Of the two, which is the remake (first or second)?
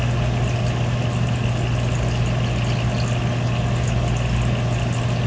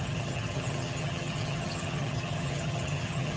second